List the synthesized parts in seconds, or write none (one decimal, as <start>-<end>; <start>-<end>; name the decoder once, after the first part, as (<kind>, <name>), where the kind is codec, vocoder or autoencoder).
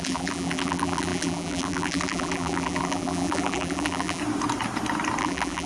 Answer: 0.0-4.2 (vocoder, BigVGAN v2); 5.2-5.7